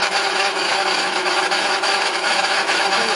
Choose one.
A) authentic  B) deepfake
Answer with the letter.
B